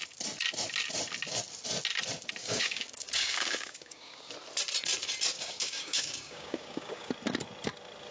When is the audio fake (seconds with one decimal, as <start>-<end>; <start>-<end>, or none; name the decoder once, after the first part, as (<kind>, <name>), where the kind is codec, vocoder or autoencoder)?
2.4-4.3 (codec, DAC); 5.3-7.1